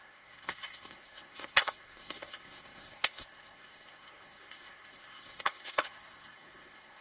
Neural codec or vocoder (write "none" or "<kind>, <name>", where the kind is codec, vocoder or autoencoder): codec, SNAC